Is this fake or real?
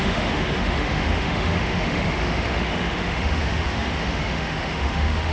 fake